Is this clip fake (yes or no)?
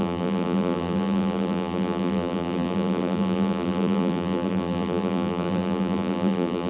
yes